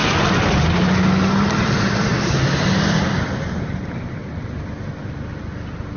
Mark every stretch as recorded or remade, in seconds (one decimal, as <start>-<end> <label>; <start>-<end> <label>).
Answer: 0.0-6.0 recorded